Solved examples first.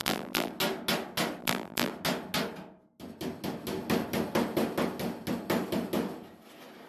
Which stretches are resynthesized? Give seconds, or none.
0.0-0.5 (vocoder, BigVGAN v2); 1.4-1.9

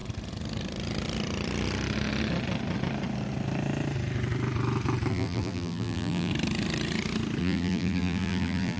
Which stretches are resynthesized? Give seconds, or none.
5.1-6.3 (vocoder, BigVGAN v2); 7.4-8.8